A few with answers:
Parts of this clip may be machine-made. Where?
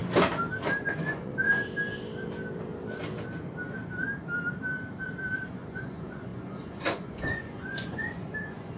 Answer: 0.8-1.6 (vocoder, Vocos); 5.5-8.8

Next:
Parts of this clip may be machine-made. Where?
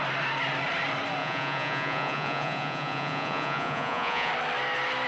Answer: 1.2-4.3 (vocoder, Vocos)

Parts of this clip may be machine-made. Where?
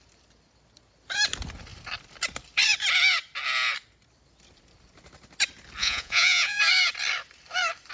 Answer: 5.8-6.6 (vocoder, Vocos)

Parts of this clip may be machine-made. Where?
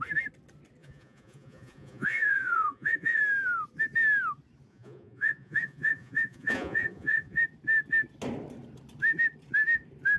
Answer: 0.8-3.2 (vocoder, Vocos); 4.7-7.4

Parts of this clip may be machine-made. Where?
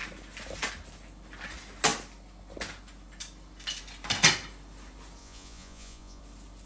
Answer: 5.2-6.2 (vocoder, Vocos)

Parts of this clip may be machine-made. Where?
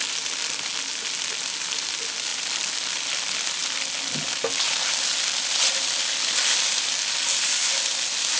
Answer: none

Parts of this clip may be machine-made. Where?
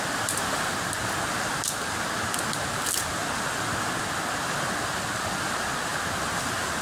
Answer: none